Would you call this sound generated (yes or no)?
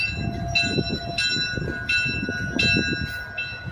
no